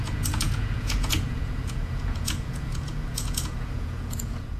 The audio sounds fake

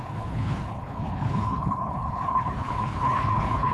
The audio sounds fake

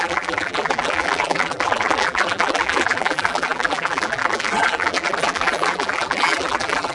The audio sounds fake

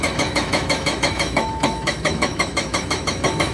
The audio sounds fake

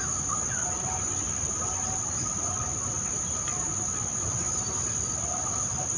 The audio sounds real